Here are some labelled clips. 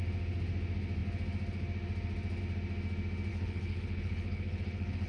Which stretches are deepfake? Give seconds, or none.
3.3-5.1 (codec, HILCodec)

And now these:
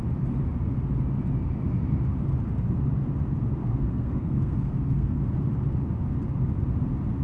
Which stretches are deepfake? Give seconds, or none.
3.6-5.2 (codec, SNAC)